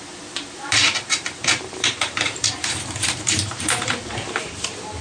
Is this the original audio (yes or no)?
no